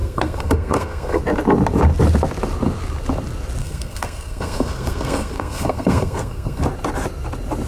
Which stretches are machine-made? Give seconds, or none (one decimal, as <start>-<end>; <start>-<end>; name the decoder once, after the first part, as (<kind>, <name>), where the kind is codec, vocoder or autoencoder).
0.0-1.2 (codec, SNAC); 3.6-6.6